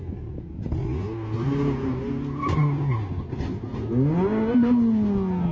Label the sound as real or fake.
real